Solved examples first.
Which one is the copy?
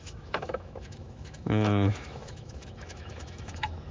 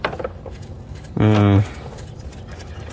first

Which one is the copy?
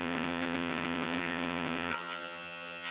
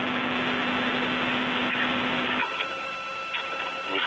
first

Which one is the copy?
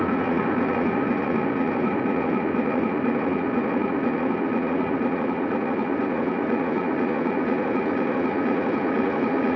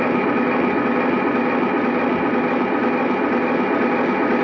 first